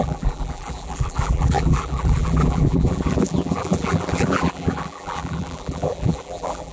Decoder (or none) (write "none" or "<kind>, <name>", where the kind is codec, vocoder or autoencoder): vocoder, BigVGAN v2